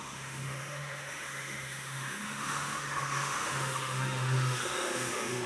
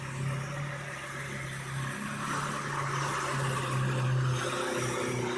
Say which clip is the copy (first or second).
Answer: first